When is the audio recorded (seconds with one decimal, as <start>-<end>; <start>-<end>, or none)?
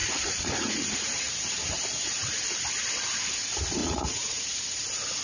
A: 1.3-3.8; 4.4-5.2